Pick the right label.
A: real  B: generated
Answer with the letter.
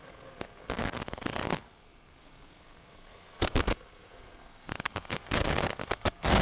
B